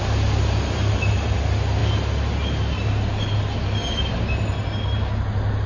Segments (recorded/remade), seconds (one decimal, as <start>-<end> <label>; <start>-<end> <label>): 0.0-5.7 recorded